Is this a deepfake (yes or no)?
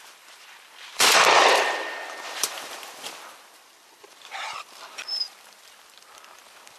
yes